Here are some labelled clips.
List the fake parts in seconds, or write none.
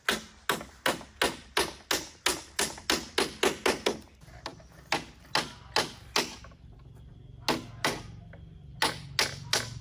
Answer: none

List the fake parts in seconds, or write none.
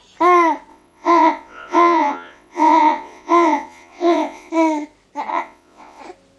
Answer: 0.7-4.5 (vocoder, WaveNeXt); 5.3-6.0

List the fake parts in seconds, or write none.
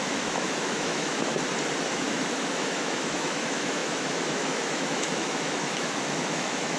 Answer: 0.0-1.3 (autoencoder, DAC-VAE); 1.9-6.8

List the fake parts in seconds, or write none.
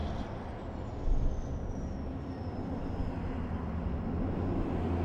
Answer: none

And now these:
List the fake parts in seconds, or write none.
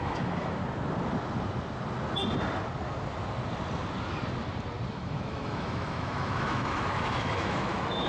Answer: 0.0-0.6 (autoencoder, DAC-VAE); 4.9-8.1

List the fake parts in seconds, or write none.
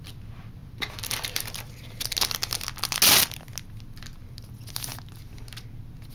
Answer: none